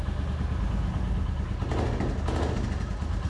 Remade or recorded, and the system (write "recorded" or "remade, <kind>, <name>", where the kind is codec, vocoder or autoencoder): recorded